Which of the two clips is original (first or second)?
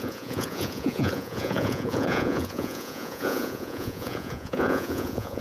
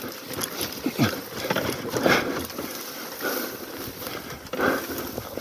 second